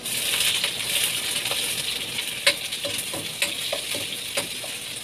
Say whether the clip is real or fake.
real